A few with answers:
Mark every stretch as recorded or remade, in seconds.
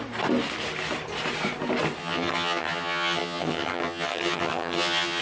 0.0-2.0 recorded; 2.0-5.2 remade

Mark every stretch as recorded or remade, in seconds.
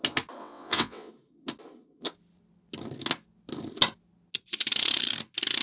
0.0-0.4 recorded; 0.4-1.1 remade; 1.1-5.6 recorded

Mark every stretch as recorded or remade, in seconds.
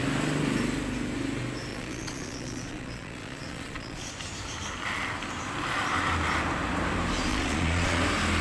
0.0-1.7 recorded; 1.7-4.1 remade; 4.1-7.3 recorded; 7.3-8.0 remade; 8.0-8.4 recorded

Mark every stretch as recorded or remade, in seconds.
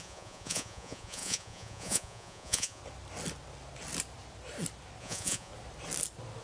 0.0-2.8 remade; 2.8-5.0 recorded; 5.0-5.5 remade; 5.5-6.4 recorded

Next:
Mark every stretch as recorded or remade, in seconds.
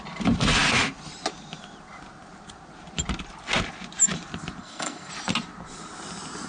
0.0-4.6 recorded; 4.6-5.1 remade; 5.1-6.5 recorded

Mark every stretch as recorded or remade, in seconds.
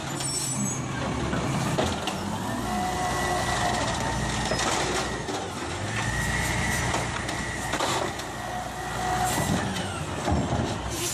0.0-11.1 recorded